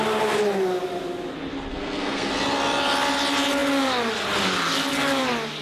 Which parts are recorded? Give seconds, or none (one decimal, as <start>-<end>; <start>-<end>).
0.0-1.7; 2.3-5.6